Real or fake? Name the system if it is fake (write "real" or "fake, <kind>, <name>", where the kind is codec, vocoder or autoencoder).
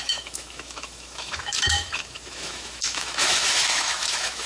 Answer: fake, autoencoder, DAC-VAE